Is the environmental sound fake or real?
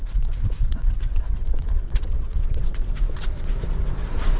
fake